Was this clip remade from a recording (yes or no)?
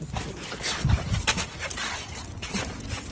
no